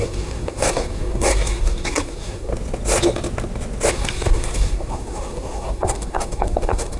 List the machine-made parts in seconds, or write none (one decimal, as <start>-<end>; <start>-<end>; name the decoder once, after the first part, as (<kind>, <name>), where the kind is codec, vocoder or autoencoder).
0.0-2.5 (codec, SNAC); 3.9-7.0